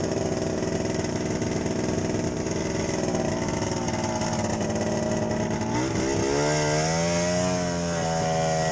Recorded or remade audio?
recorded